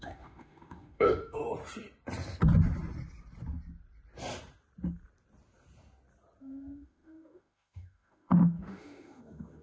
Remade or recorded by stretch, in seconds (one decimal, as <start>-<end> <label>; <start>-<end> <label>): 0.0-1.4 remade; 1.4-6.4 recorded; 6.4-9.6 remade